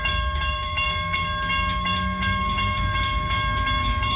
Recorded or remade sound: remade